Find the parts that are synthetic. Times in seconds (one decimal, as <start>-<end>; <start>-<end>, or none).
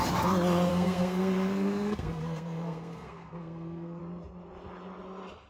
0.7-4.0